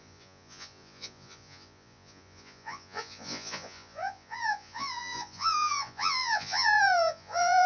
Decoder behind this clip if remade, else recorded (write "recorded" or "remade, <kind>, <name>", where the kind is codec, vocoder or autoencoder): remade, vocoder, Vocos